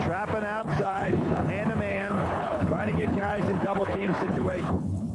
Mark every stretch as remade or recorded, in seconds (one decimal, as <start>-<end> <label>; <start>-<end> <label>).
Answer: 0.0-0.6 recorded; 0.6-1.5 remade; 1.5-1.9 recorded; 1.9-5.1 remade

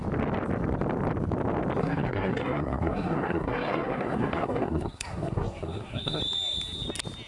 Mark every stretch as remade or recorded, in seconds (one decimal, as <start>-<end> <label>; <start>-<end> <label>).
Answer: 0.0-1.8 recorded; 1.8-6.2 remade; 6.2-7.3 recorded